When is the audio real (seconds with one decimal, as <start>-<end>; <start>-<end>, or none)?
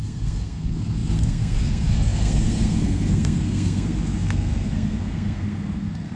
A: none